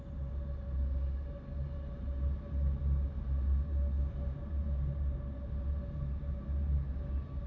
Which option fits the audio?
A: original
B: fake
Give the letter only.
A